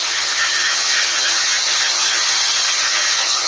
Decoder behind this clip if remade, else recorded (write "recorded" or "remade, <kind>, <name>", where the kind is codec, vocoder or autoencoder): remade, vocoder, HiFi-GAN